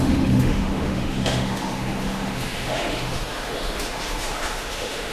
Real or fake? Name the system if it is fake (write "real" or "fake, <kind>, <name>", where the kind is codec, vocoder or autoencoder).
fake, autoencoder, DAC-VAE